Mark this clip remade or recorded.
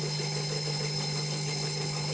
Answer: remade